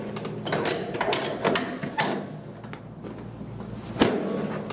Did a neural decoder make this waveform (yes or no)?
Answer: no